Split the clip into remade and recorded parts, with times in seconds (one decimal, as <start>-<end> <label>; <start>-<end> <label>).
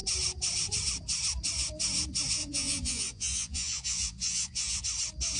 0.0-2.4 recorded; 2.4-4.8 remade; 4.8-5.4 recorded